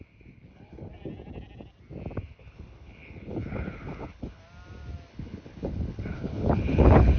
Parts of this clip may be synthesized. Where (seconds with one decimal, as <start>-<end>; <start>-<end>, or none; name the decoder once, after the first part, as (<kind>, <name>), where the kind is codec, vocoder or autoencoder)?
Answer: 0.0-0.9 (codec, HILCodec); 2.2-4.4; 5.1-7.2